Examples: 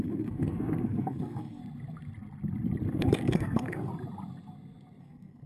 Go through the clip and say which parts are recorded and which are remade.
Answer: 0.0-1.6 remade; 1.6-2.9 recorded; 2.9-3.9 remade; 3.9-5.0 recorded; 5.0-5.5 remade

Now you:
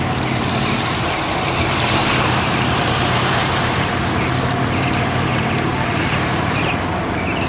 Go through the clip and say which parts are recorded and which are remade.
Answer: 0.0-2.0 recorded; 2.0-3.9 remade; 3.9-5.3 recorded; 5.3-6.7 remade; 6.7-7.5 recorded

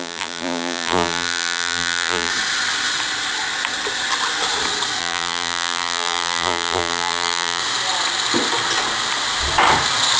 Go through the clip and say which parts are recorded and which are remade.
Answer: 0.0-2.3 remade; 2.3-5.0 recorded; 5.0-7.6 remade; 7.6-10.2 recorded

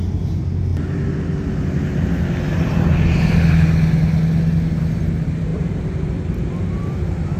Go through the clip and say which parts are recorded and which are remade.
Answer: 0.0-5.5 recorded; 5.5-7.4 remade